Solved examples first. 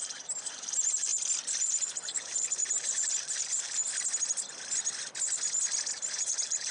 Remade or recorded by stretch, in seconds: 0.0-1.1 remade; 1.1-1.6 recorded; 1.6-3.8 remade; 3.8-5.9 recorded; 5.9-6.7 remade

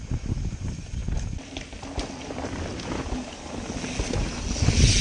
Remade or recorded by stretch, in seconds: 0.0-1.0 remade; 1.0-2.2 recorded; 2.2-2.7 remade; 2.7-5.0 recorded

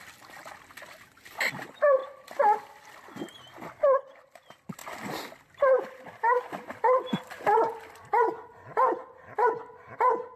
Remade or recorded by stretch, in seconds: 0.0-10.4 recorded

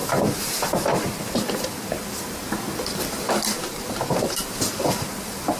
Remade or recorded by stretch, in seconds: 0.0-5.6 recorded